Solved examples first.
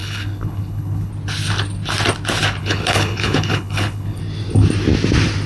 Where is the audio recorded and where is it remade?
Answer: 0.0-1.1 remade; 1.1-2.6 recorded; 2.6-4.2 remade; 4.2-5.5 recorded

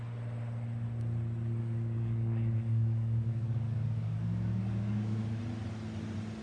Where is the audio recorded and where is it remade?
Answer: 0.0-1.6 recorded; 1.6-5.4 remade; 5.4-6.4 recorded